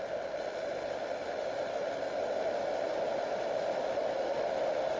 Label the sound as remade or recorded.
recorded